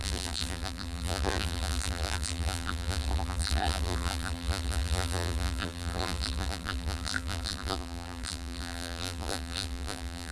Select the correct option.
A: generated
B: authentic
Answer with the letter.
A